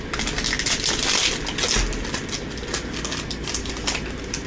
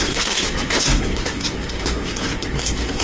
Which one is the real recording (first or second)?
first